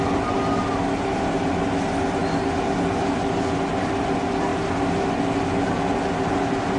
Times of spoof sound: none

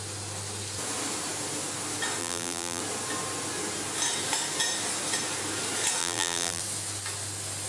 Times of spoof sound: 2.2-2.8 (vocoder, BigVGAN v2); 6.0-6.6

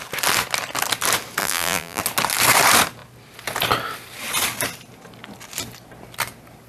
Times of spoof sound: 1.4-2.0 (vocoder, BigVGAN v2)

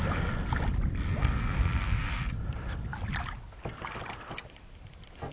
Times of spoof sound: 1.2-2.2 (codec, SNAC)